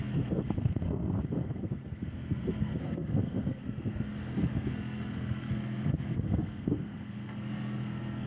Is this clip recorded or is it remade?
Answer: remade